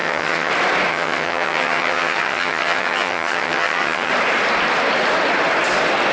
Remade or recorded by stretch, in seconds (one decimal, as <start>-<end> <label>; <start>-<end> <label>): 0.0-0.5 remade; 0.5-0.9 recorded; 0.9-4.1 remade; 4.1-6.1 recorded